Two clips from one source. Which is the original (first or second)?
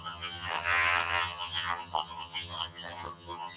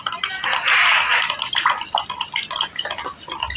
second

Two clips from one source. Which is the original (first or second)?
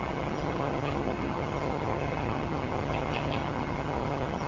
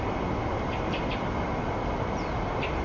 second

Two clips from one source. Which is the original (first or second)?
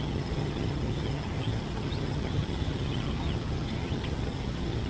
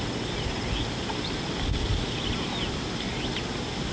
second